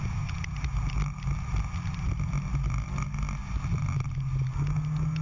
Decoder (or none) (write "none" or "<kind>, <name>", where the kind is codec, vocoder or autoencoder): none